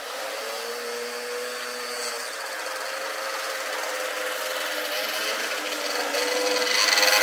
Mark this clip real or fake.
real